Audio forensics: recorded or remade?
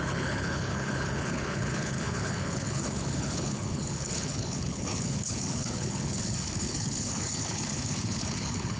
remade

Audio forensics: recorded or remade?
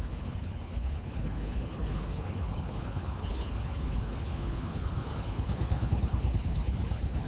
remade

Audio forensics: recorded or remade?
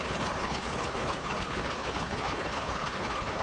remade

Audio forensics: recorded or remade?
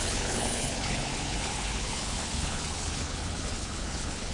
remade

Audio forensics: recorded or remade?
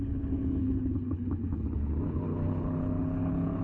remade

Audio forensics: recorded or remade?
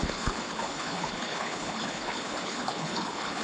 remade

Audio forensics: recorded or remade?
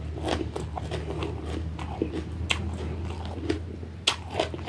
recorded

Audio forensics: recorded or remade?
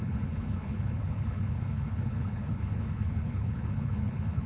remade